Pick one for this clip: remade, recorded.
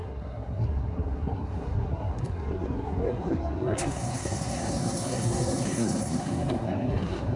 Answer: remade